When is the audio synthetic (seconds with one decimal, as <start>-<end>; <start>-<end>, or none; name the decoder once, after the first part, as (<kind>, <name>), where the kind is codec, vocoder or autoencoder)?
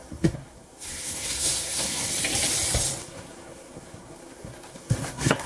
0.0-2.1 (codec, SNAC); 3.0-5.5